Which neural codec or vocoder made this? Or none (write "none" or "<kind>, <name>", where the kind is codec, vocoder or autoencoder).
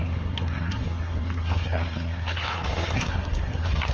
codec, SNAC